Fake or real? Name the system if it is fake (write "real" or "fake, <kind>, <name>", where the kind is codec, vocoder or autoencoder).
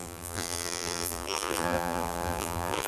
fake, vocoder, BigVGAN v2